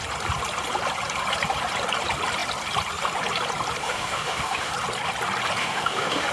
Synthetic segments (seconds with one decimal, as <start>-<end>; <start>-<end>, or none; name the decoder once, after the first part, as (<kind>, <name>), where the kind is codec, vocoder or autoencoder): 3.8-4.7 (autoencoder, DAC-VAE); 5.6-6.3